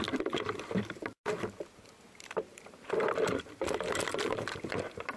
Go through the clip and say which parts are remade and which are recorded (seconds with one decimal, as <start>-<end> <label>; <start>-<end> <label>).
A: 0.0-5.2 remade